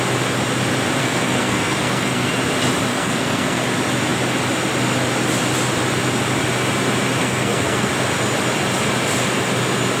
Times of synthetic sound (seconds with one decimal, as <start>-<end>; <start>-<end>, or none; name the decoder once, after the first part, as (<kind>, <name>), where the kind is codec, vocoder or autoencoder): 1.0-2.3 (codec, SNAC); 2.9-3.6; 7.2-7.9